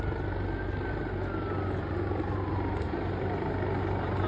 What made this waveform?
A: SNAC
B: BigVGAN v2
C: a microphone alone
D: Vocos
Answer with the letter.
C